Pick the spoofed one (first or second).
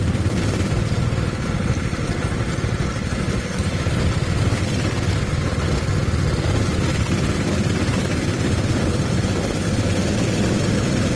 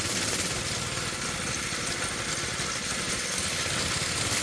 first